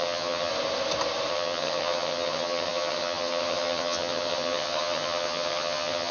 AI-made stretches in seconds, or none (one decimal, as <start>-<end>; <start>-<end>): 0.0-0.5; 1.3-6.1

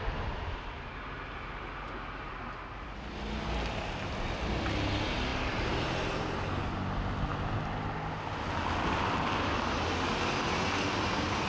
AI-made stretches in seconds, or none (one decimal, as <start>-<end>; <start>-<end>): none

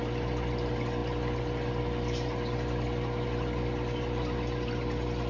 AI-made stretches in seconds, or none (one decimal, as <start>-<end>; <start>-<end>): none

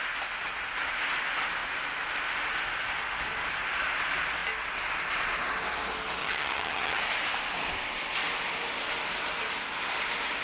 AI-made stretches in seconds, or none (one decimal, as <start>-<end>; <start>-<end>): 6.2-7.0

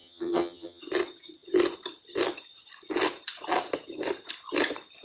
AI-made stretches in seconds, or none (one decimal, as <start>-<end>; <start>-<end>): 0.0-0.8

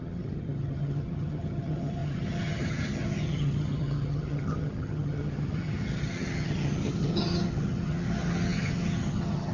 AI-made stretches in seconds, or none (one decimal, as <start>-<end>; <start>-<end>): 0.0-9.5